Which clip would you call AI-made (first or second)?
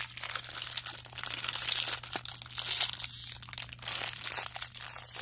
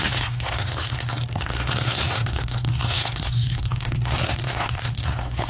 second